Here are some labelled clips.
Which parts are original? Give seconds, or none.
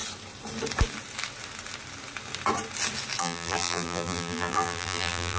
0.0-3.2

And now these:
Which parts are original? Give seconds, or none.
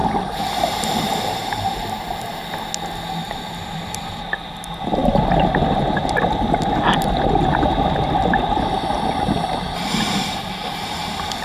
0.0-3.2; 4.6-11.4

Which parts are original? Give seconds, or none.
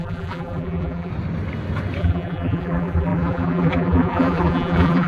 1.1-2.0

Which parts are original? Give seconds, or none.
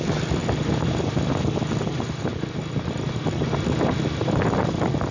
0.0-5.1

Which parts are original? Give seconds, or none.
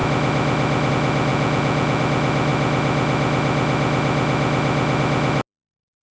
0.0-1.3; 2.0-6.1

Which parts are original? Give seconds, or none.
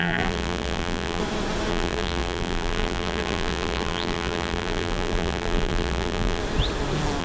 1.2-1.7; 6.4-7.2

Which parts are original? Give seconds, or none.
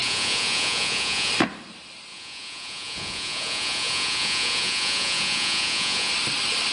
1.3-2.1; 6.1-6.7